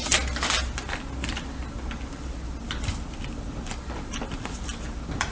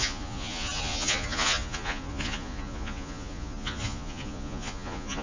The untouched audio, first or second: first